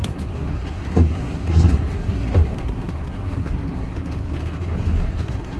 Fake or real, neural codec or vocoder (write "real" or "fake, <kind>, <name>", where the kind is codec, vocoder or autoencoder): fake, codec, SNAC